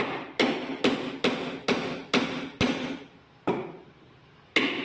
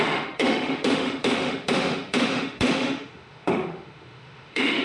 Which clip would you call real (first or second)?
first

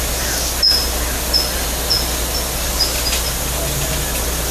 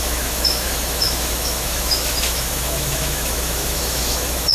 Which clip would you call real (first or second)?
first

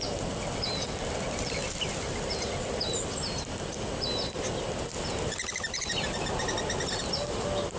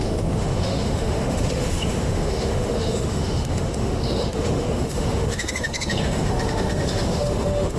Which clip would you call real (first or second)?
first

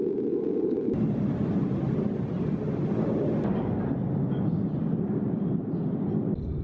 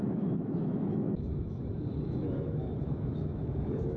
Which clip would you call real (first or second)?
first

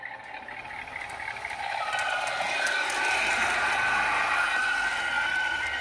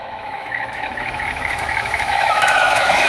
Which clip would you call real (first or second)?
first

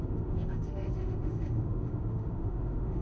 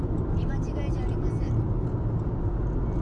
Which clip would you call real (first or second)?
second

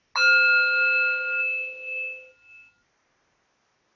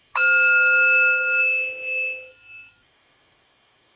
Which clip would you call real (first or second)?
first